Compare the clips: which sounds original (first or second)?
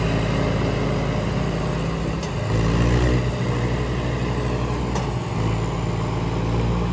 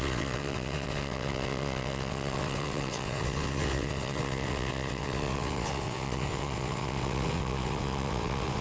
first